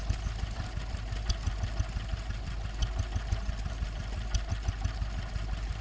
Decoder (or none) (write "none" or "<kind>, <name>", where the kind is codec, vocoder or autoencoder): none